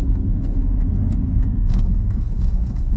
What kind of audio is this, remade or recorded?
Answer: remade